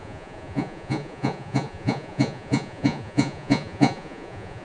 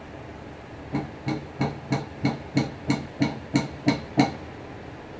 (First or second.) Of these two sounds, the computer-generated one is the first